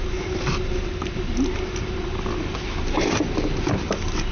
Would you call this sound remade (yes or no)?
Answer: no